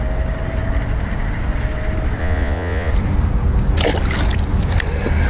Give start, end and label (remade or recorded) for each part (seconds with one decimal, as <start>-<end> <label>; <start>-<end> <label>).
0.0-2.2 recorded; 2.2-2.9 remade; 2.9-5.3 recorded